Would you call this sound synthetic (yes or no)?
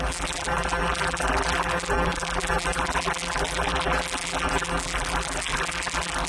yes